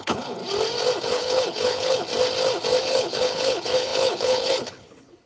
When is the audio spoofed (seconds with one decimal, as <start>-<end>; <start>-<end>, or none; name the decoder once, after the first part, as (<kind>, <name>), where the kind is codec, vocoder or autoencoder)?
0.0-0.4 (codec, HILCodec); 1.0-2.1; 2.8-5.3